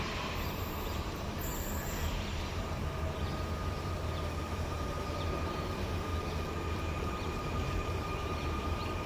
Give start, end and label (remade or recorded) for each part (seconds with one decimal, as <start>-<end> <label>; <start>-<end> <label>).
0.0-6.1 remade; 6.1-7.0 recorded; 7.0-9.1 remade